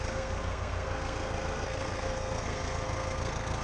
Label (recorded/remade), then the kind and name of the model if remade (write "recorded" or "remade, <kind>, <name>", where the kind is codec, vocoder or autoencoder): remade, codec, SNAC